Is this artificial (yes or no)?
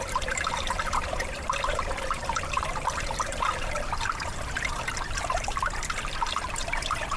yes